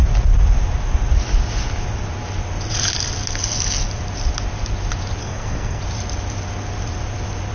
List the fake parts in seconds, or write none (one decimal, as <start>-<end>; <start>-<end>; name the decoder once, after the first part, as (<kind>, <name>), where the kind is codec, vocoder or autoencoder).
5.2-5.8 (codec, SNAC)